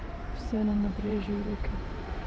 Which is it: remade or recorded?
remade